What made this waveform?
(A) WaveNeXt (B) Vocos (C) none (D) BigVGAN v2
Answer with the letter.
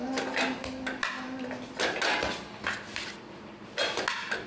C